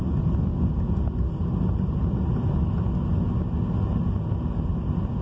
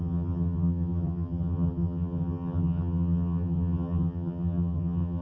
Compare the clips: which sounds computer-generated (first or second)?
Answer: second